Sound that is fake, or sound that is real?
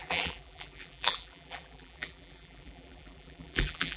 fake